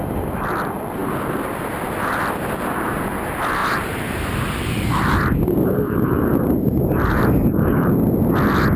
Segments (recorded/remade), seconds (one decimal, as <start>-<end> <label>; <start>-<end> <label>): 0.0-3.6 recorded; 3.6-7.9 remade; 7.9-8.8 recorded